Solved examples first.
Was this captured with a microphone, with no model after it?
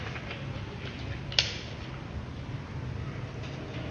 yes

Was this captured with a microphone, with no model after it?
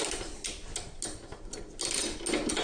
yes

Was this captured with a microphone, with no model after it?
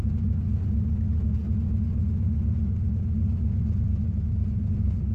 yes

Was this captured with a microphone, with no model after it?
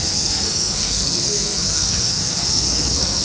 no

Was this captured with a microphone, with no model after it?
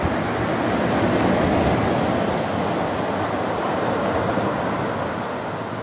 yes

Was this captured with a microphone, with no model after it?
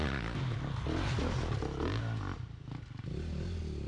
yes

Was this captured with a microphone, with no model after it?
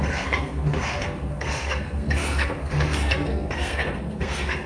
no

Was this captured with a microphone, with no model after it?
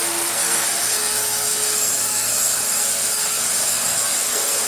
no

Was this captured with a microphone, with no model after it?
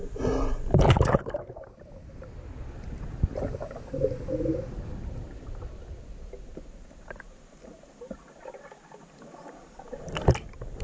yes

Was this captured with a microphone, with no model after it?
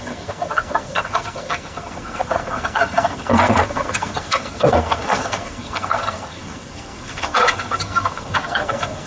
no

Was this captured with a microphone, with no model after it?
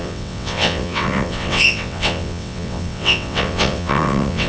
no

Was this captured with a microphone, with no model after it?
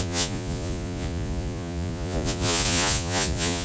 no